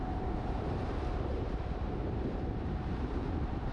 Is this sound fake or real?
fake